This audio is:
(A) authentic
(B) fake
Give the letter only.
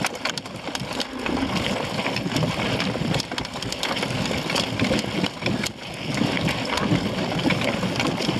A